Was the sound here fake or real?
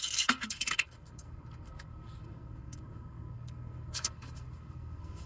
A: fake